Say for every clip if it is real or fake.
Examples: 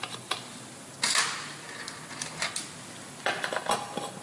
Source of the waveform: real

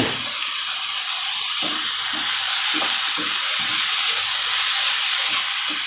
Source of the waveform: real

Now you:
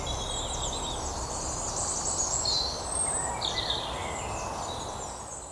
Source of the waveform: real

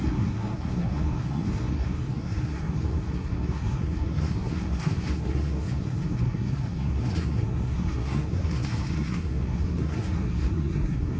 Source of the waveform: fake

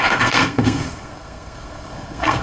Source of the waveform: fake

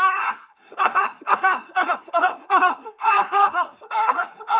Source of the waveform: fake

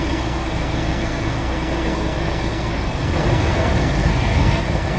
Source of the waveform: fake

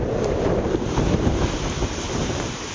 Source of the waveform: real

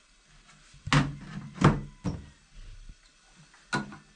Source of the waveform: real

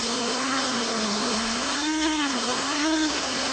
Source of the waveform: fake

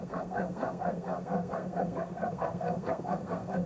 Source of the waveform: fake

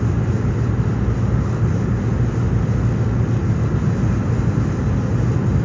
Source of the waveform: real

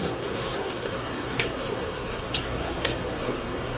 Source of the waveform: fake